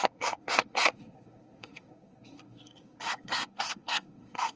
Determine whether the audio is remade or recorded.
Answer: remade